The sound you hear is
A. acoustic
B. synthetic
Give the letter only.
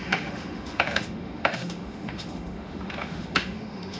B